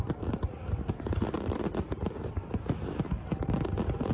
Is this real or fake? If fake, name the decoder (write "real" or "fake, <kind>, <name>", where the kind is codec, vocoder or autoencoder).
real